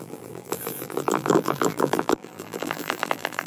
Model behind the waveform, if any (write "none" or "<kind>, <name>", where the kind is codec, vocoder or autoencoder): vocoder, BigVGAN v2